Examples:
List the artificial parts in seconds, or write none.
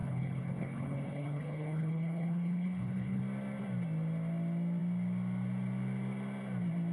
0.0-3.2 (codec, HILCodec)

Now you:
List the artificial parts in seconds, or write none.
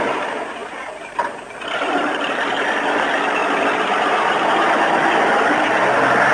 none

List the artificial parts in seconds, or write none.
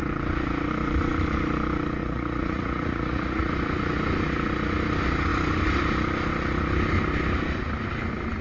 2.0-3.5 (vocoder, Vocos)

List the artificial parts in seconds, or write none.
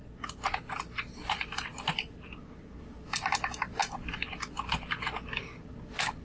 none